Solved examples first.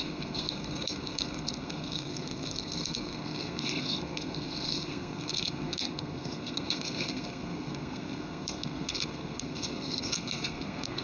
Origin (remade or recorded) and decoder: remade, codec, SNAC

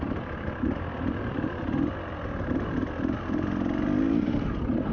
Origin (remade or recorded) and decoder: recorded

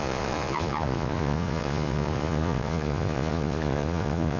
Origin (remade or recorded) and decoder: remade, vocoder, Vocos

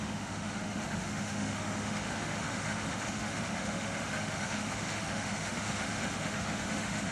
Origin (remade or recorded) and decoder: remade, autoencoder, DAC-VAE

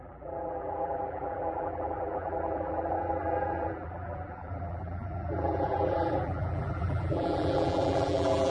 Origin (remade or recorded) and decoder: remade, vocoder, BigVGAN v2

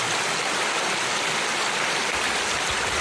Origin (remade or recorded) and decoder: remade, vocoder, BigVGAN v2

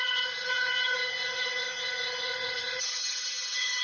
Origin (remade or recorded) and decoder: remade, vocoder, HiFi-GAN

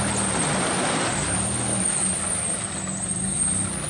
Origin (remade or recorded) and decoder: recorded